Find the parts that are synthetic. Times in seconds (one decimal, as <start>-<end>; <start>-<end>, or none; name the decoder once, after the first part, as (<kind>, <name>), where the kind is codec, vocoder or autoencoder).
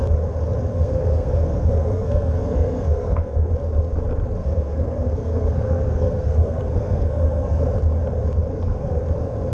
0.7-3.5 (codec, SNAC); 4.4-7.6; 8.5-9.0